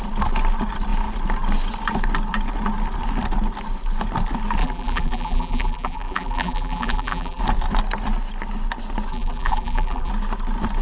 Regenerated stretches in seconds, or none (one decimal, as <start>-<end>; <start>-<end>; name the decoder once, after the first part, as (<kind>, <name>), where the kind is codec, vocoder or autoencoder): 4.6-7.4 (vocoder, BigVGAN v2); 9.1-10.1

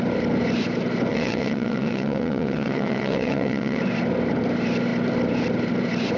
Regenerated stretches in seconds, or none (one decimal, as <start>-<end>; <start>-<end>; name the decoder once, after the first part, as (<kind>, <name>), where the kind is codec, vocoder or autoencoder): 1.1-3.8 (vocoder, WaveNeXt)

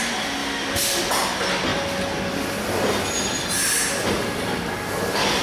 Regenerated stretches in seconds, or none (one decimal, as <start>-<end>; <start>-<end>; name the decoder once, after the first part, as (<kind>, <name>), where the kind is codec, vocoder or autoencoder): 0.4-1.1 (vocoder, BigVGAN v2); 4.0-5.4

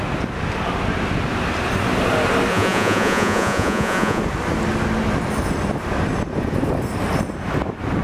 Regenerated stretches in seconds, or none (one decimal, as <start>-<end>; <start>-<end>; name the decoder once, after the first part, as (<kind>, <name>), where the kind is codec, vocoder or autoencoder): 2.5-4.2 (vocoder, Vocos)